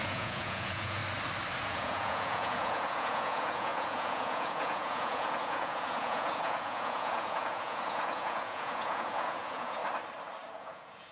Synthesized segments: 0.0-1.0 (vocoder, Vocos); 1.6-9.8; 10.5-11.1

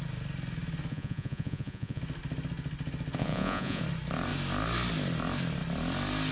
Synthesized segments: 0.9-2.0 (vocoder, Vocos); 3.2-3.8

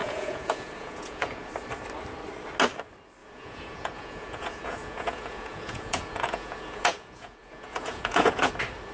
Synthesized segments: 0.0-1.5 (vocoder, Vocos); 3.2-8.5

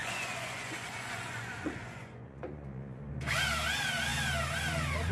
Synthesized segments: 0.0-3.1 (vocoder, Vocos)

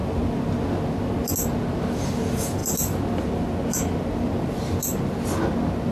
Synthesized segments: none